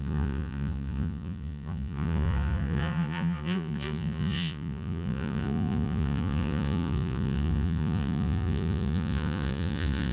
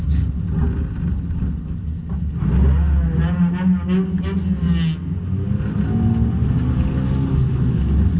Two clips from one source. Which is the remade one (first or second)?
first